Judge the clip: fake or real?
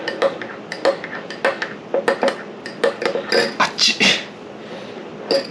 real